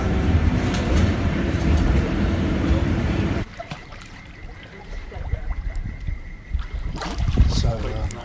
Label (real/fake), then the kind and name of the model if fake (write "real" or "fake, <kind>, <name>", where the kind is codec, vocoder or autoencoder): fake, vocoder, BigVGAN v2